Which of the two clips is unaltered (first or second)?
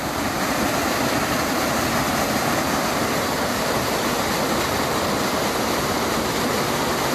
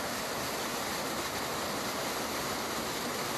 second